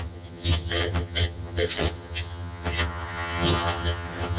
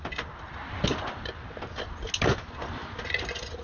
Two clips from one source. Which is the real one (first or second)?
second